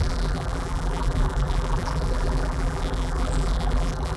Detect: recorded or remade remade